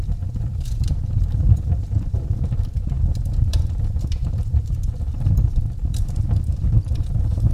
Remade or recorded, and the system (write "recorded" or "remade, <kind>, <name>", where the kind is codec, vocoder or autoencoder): remade, vocoder, BigVGAN v2